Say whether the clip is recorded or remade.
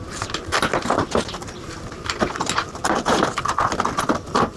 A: remade